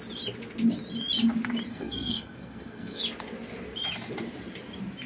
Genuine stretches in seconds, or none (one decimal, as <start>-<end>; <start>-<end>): 0.0-1.7; 3.0-5.1